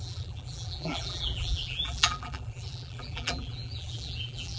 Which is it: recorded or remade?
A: remade